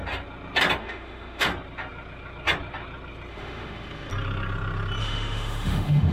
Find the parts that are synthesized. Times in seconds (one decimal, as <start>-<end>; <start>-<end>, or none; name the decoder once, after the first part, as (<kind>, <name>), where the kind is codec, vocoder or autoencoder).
0.8-1.5 (autoencoder, DAC-VAE); 3.3-4.1; 5.0-6.1